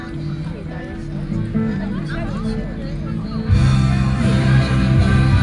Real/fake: real